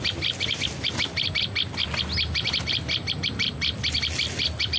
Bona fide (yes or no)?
yes